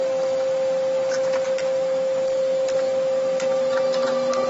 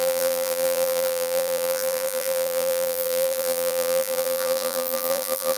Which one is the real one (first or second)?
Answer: first